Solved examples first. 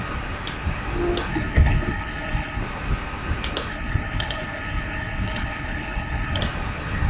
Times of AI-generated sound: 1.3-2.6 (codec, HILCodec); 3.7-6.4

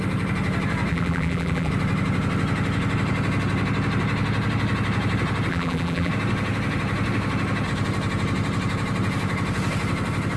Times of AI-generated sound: 0.9-1.7 (vocoder, BigVGAN v2); 5.5-6.1

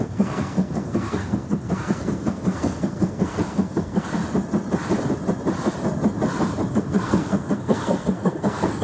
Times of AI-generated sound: 0.0-4.2 (codec, SNAC); 6.7-8.8

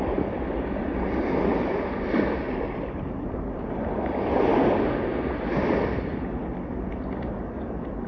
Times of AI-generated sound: none

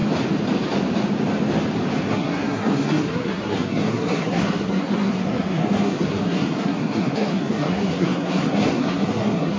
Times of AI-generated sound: 2.1-9.6 (codec, SNAC)

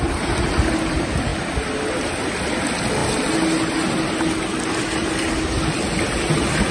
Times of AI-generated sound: none

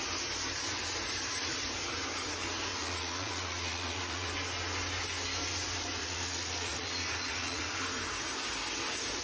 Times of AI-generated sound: 2.7-4.3 (vocoder, Vocos); 6.0-7.8

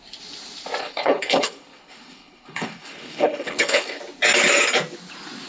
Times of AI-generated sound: 0.8-4.0 (codec, HILCodec)